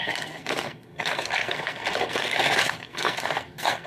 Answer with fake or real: fake